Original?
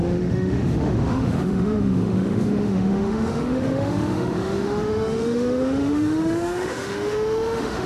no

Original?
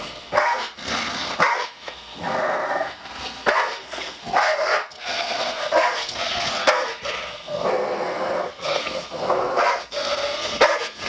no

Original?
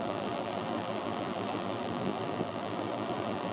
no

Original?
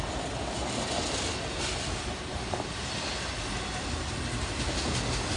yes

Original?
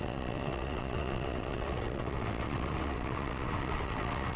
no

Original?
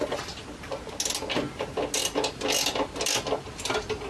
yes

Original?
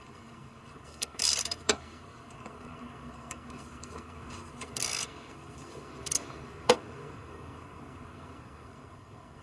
no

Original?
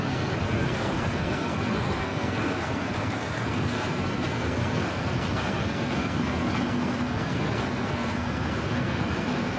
no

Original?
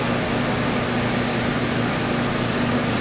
yes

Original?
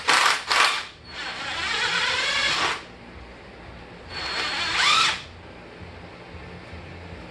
yes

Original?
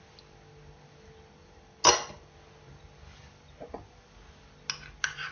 yes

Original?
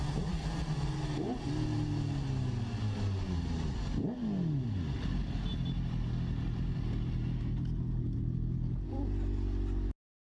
yes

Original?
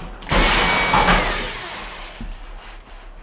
yes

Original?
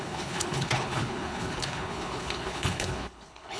no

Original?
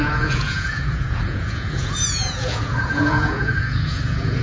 no